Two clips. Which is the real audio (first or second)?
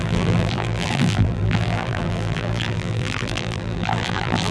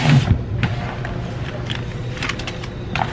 second